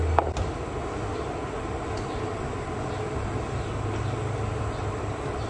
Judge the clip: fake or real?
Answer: real